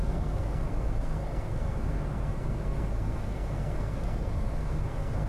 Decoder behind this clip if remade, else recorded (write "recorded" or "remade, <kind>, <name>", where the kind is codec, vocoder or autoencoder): remade, codec, SNAC